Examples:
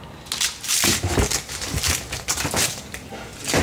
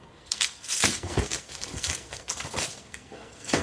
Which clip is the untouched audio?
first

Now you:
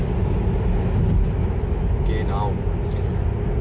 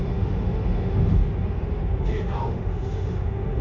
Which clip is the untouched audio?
first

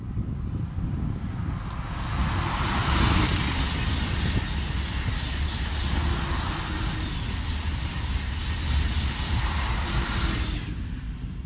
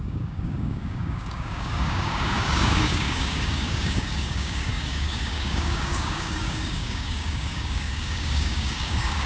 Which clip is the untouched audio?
first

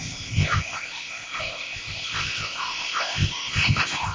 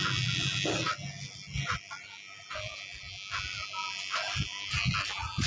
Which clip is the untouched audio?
second